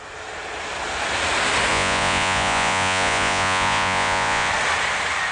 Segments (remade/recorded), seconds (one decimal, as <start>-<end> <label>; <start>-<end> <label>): 0.0-1.7 recorded; 1.7-4.5 remade; 4.5-5.3 recorded